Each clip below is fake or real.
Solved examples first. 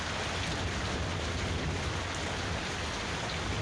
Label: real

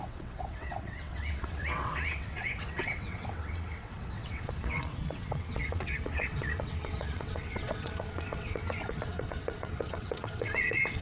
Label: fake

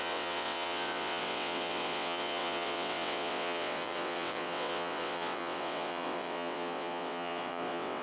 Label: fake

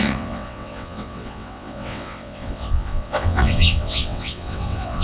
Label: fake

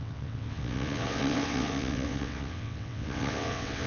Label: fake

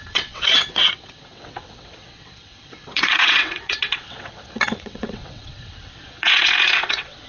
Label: fake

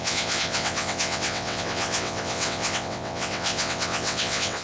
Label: fake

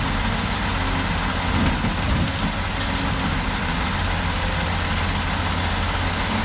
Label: real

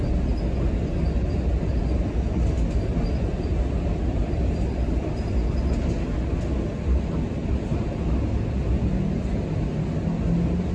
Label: real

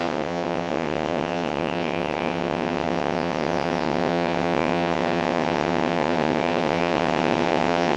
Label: fake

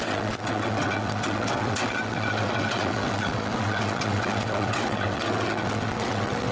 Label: fake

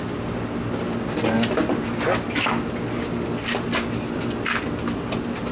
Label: real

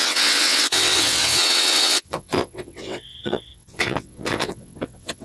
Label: fake